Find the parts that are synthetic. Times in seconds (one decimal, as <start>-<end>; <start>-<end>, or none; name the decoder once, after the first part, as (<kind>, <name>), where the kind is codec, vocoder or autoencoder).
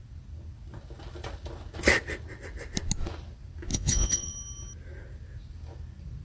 3.7-4.3 (vocoder, Vocos)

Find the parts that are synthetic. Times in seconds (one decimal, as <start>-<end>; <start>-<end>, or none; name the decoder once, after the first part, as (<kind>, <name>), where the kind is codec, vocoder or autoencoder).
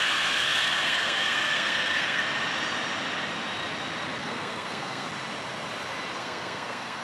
0.0-2.2 (codec, SNAC); 4.2-5.1; 6.2-7.0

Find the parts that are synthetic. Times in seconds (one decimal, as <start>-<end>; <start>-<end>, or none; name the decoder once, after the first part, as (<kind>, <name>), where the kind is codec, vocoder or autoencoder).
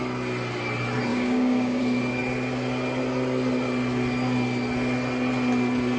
1.1-1.8 (codec, DAC)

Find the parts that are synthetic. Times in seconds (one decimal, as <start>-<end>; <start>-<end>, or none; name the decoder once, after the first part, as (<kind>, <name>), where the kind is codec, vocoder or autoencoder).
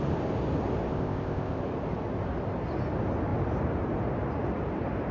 0.9-1.6 (codec, ZipCodec)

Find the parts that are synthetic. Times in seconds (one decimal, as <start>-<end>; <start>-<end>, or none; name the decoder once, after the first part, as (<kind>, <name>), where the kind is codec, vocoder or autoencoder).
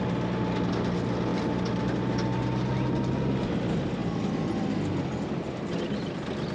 none